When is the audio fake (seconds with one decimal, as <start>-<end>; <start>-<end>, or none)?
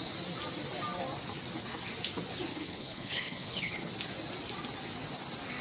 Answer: 2.5-3.9